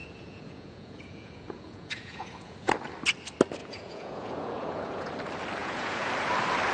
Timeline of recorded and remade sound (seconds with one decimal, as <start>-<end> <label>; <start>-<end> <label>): 0.0-2.7 remade; 2.7-3.6 recorded; 3.6-5.1 remade; 5.1-5.6 recorded; 5.6-6.1 remade; 6.1-6.7 recorded